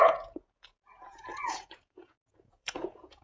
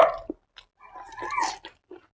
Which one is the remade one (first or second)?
first